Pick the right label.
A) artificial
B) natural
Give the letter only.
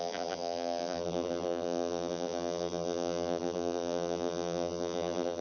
A